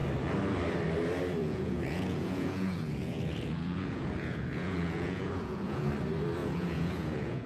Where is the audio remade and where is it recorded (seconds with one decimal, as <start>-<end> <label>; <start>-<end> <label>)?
0.0-1.4 recorded; 1.4-5.9 remade; 5.9-6.4 recorded; 6.4-7.5 remade